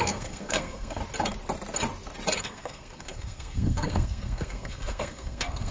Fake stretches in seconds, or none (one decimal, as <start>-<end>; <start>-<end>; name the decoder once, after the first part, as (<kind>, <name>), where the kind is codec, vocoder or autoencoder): 0.0-1.0 (codec, SNAC); 2.4-5.7